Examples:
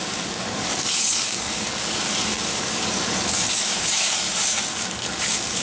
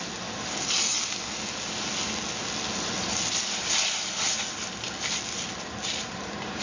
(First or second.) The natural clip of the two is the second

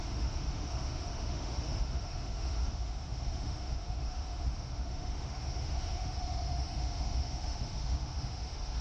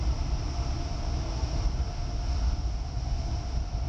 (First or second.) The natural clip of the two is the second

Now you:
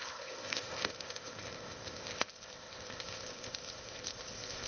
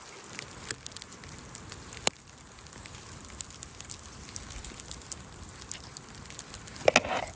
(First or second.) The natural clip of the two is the second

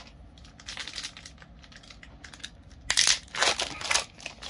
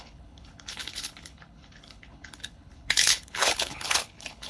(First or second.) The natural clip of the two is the first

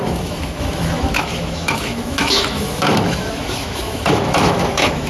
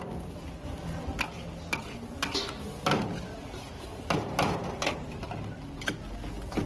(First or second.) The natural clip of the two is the second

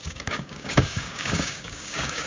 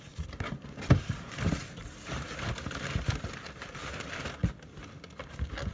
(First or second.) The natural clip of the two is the second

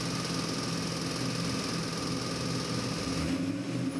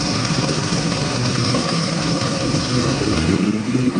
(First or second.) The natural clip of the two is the first